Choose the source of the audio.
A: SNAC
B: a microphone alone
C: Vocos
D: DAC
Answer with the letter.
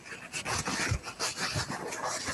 B